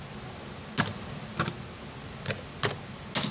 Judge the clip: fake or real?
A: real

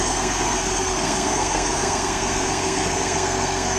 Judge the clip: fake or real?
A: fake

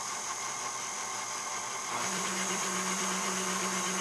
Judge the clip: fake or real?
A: fake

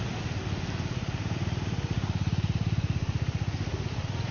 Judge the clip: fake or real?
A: real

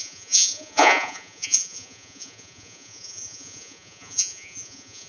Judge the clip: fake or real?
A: fake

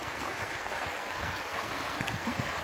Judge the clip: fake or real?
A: fake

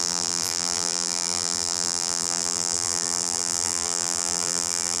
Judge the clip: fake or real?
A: fake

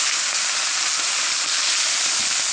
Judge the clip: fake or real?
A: real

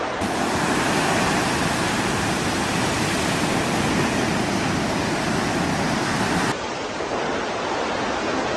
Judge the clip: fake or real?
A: real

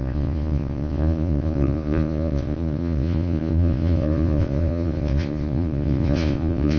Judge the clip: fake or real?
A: fake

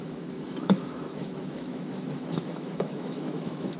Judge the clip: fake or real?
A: fake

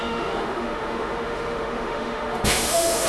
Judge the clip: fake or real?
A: fake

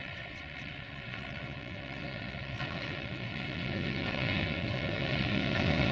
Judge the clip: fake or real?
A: fake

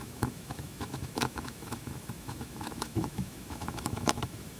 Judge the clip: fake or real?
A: fake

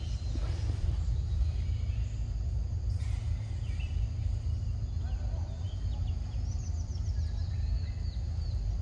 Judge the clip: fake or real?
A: real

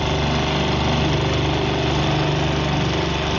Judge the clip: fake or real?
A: real